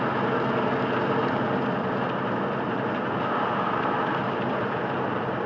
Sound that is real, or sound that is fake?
real